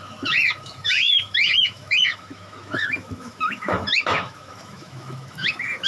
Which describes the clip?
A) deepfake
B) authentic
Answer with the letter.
A